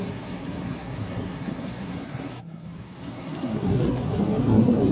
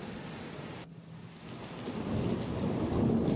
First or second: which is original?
second